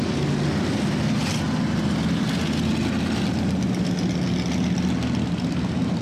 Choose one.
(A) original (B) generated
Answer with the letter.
A